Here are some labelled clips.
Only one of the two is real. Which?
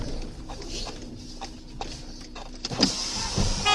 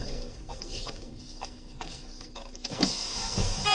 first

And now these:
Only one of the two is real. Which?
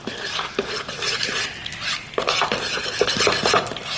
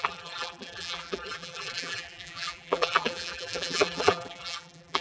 first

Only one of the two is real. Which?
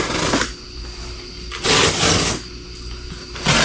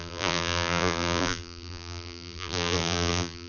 first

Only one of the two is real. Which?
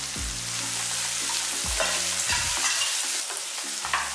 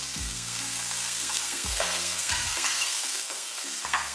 first